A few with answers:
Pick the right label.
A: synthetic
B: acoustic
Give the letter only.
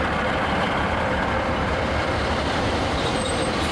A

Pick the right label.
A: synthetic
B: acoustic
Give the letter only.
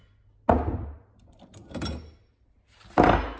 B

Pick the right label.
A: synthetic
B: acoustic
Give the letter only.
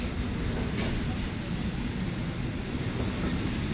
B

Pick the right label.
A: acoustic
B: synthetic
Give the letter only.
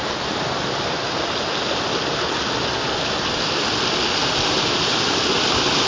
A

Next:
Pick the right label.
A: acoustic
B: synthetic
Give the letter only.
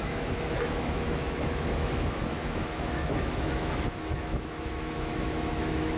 B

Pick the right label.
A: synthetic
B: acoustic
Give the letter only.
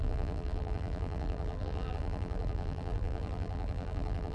A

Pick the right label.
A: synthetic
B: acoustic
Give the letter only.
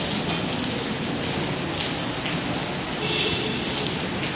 B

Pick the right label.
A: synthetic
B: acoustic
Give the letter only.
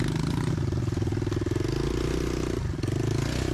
B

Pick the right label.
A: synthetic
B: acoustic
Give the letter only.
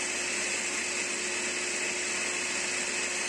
B